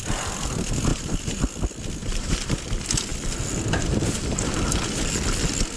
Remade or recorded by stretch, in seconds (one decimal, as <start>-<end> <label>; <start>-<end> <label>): 0.0-0.9 recorded; 0.9-1.4 remade; 1.4-2.0 recorded; 2.0-2.6 remade; 2.6-5.8 recorded